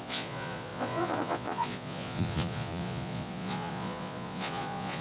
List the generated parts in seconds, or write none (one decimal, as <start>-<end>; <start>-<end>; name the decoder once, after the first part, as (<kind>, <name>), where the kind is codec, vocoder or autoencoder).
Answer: 0.0-5.0 (vocoder, Vocos)